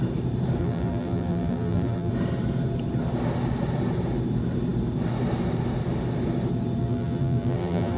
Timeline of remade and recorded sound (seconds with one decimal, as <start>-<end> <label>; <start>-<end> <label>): 0.0-0.6 recorded; 0.6-2.1 remade; 2.1-6.8 recorded; 6.8-8.0 remade